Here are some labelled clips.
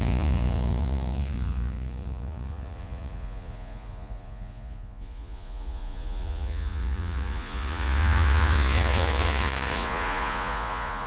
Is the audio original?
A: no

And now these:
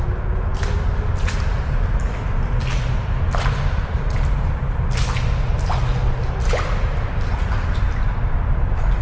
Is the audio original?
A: yes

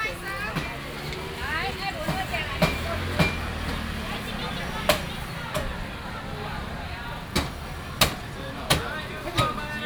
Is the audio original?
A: yes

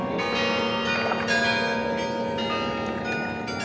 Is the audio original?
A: yes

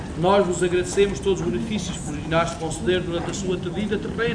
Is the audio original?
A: yes